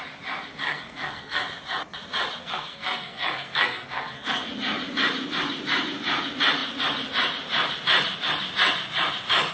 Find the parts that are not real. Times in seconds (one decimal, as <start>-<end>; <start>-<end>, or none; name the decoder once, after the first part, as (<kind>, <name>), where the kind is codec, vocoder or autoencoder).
0.6-1.4 (codec, SNAC); 2.4-4.5